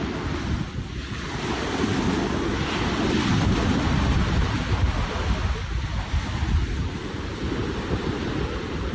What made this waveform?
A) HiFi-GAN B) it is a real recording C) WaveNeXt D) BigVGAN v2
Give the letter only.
B